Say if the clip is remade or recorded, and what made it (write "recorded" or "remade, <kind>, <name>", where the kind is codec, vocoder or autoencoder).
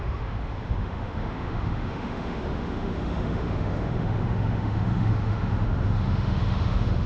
remade, autoencoder, DAC-VAE